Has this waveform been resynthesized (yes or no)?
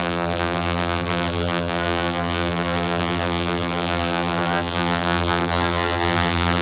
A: yes